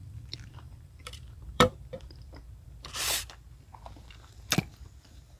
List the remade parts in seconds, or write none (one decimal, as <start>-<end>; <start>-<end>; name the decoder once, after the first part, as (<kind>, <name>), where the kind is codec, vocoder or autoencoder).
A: 0.0-3.2 (vocoder, BigVGAN v2)